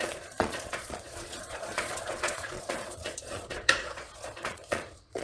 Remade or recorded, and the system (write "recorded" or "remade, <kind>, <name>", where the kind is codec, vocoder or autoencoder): remade, vocoder, Vocos